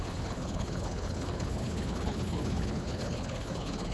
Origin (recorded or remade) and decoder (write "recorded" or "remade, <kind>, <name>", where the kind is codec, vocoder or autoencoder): remade, codec, HILCodec